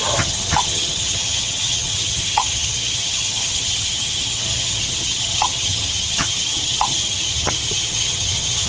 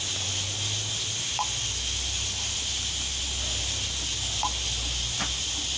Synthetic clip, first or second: first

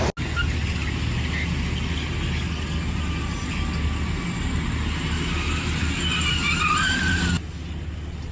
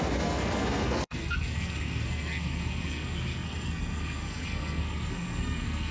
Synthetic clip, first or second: second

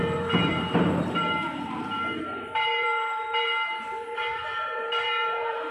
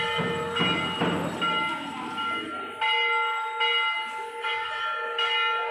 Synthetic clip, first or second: first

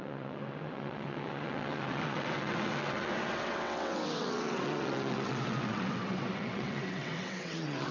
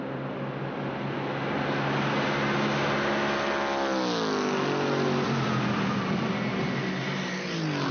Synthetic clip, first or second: first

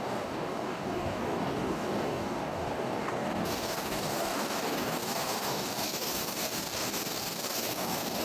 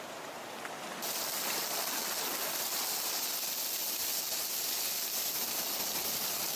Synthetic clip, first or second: first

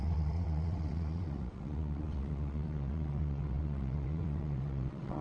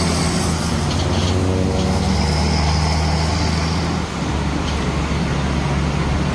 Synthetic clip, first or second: first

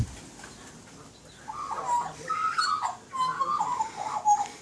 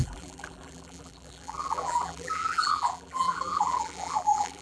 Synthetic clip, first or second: second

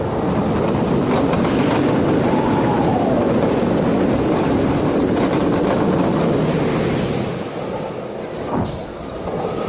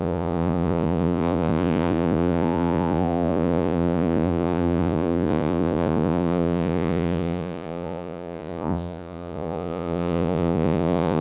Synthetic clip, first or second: second